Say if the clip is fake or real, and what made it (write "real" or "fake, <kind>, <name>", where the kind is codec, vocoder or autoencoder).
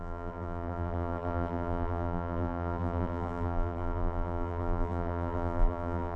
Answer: fake, vocoder, BigVGAN v2